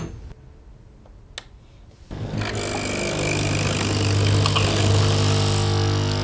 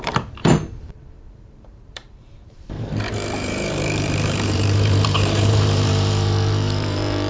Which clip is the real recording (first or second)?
first